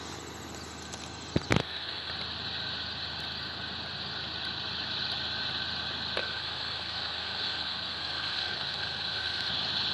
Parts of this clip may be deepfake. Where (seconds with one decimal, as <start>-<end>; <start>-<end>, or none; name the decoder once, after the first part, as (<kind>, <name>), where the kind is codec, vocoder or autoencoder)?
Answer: 1.6-2.1 (codec, SNAC); 6.2-9.5